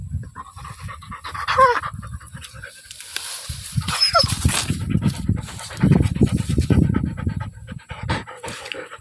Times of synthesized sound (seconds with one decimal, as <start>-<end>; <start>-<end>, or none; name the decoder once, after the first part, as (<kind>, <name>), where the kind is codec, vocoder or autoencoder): 2.1-9.0 (vocoder, BigVGAN v2)